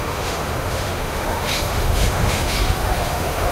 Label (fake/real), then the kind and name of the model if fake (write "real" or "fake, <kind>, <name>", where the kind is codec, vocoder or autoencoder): fake, autoencoder, DAC-VAE